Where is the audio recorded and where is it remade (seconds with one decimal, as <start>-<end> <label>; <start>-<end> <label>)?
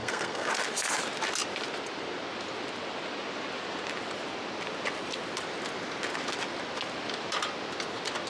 0.0-0.5 remade; 0.5-8.3 recorded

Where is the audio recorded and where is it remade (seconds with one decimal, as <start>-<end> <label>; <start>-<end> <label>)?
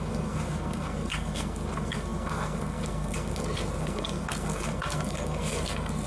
0.0-6.1 remade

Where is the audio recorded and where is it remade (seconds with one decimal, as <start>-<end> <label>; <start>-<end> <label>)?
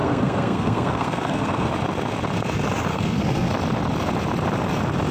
0.0-1.7 remade; 1.7-2.9 recorded; 2.9-3.5 remade; 3.5-5.1 recorded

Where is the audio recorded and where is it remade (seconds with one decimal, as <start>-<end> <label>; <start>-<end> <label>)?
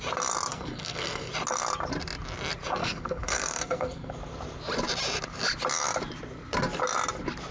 0.0-0.5 recorded; 0.5-1.3 remade; 1.3-2.8 recorded; 2.8-4.1 remade; 4.1-7.5 recorded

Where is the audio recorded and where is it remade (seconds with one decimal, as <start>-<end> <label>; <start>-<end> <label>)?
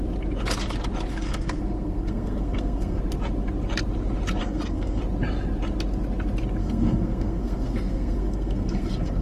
0.0-1.1 recorded; 1.1-3.0 remade; 3.0-4.4 recorded; 4.4-5.0 remade; 5.0-6.6 recorded; 6.6-9.2 remade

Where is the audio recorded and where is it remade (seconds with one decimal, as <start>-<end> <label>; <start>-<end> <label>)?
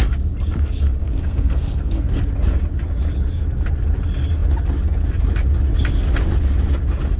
0.0-1.0 recorded; 1.0-2.2 remade; 2.2-7.2 recorded